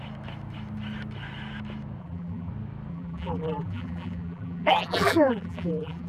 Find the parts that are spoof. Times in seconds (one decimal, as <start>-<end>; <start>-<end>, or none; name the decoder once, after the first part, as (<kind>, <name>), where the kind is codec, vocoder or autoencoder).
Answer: 2.0-2.5 (vocoder, BigVGAN v2); 2.9-6.1